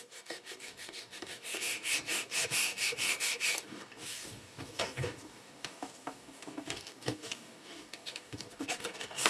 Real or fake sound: fake